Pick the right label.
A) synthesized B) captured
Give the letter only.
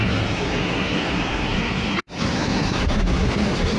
A